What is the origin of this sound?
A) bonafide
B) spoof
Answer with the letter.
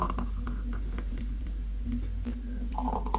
A